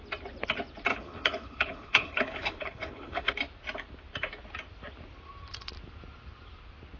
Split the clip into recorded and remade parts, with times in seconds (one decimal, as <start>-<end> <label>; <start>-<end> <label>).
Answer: 0.0-0.9 recorded; 0.9-3.3 remade; 3.3-7.0 recorded